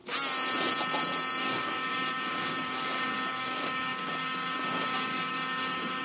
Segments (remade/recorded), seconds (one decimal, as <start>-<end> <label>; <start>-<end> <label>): 0.0-1.4 recorded; 1.4-6.0 remade